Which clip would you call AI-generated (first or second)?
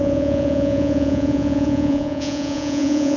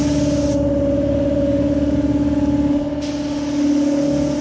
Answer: first